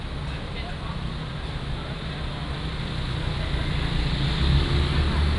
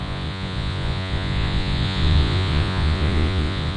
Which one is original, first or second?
first